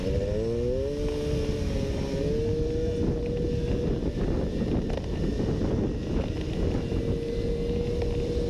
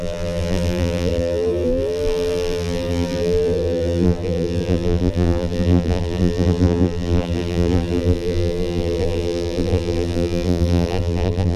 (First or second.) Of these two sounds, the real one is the first